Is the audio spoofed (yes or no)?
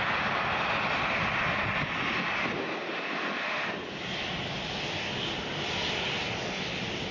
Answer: no